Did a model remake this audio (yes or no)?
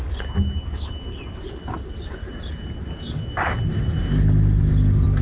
no